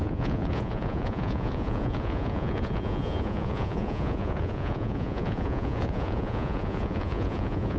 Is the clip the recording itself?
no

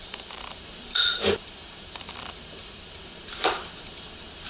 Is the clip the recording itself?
no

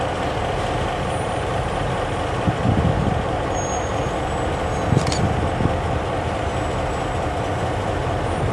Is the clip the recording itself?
yes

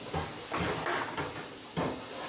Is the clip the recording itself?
yes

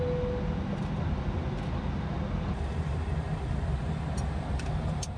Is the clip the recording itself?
yes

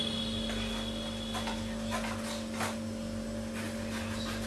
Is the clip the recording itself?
yes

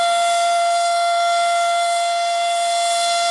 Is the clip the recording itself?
no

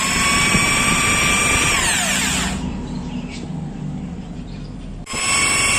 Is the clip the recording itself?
yes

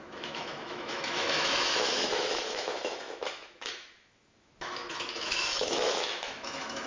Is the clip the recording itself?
no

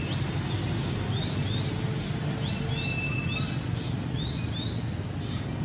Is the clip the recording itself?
yes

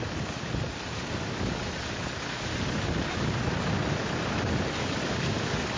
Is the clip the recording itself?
yes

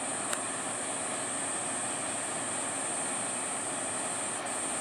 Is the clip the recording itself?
yes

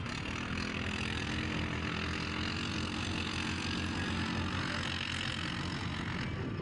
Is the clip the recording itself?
yes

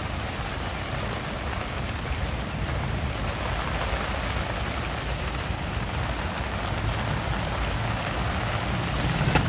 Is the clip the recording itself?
yes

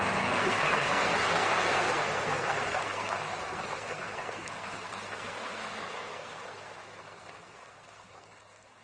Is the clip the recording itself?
no